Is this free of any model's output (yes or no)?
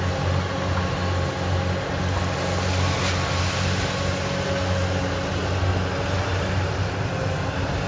yes